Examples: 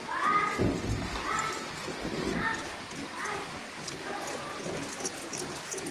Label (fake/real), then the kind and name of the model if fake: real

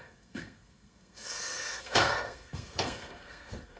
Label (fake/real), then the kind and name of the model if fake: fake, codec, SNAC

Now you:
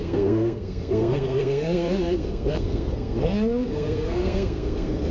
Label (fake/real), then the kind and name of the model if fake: fake, codec, SNAC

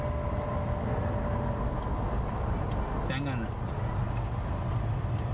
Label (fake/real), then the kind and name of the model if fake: real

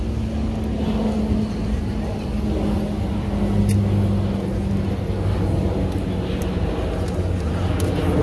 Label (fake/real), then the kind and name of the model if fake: real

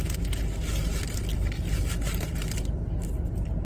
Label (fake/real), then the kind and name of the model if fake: real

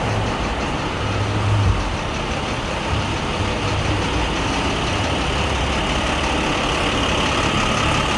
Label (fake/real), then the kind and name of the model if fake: real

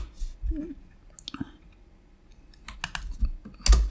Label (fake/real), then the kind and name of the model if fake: real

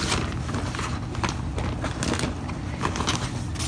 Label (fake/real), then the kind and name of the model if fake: real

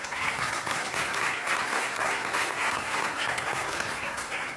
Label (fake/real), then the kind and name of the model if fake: fake, codec, SNAC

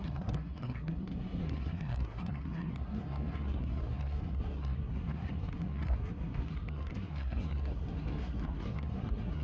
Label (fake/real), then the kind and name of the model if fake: fake, codec, SNAC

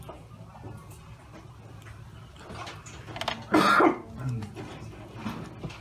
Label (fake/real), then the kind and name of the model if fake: real